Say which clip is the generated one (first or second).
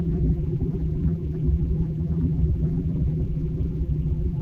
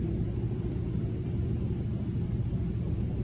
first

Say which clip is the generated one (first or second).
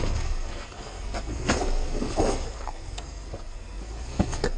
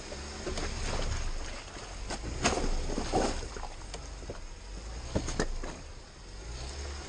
first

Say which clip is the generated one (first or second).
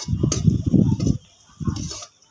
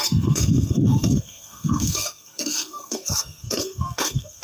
second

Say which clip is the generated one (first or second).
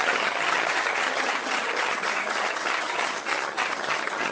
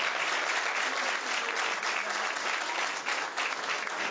first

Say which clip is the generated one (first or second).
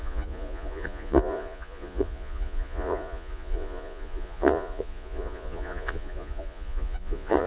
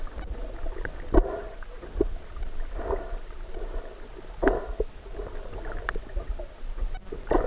first